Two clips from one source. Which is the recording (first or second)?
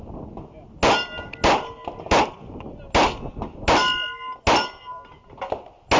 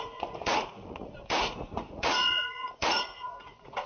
first